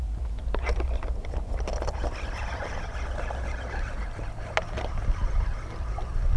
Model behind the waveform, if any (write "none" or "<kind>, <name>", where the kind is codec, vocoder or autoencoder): none